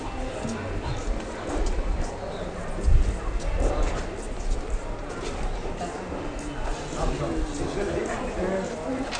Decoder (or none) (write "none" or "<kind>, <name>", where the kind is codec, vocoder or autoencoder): none